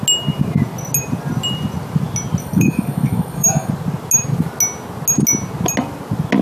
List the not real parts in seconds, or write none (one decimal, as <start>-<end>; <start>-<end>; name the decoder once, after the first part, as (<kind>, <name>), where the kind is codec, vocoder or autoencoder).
2.4-3.7 (codec, DAC)